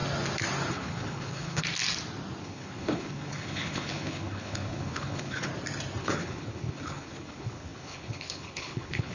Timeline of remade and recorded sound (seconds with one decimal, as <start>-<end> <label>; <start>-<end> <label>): 0.0-0.7 recorded; 0.7-1.6 remade; 1.6-2.4 recorded; 2.4-5.5 remade; 5.5-6.0 recorded; 6.0-9.1 remade